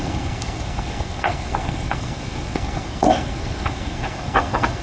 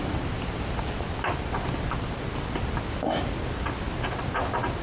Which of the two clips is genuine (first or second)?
second